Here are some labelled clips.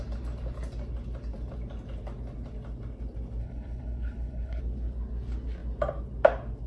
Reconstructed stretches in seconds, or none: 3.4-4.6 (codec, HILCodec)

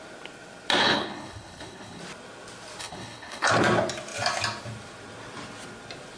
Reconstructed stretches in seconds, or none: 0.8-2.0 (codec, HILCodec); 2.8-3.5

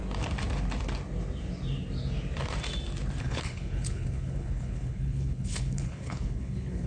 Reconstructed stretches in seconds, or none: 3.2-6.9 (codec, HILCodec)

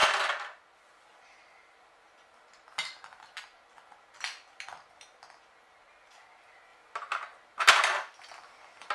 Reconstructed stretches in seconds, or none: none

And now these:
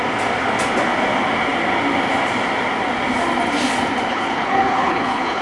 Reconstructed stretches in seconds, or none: 4.1-5.4 (codec, HILCodec)

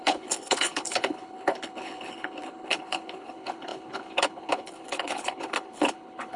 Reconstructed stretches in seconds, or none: 0.0-6.4 (codec, HILCodec)